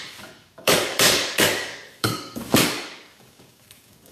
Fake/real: fake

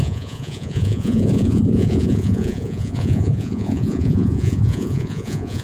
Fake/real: fake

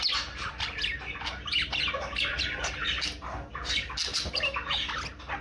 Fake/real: real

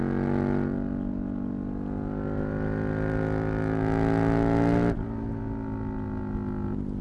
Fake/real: real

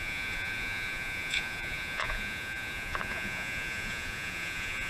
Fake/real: fake